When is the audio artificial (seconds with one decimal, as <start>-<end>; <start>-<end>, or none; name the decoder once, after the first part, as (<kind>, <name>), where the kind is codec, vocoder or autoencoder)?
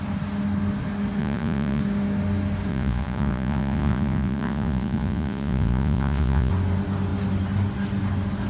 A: 1.2-1.8 (vocoder, Vocos); 2.7-6.5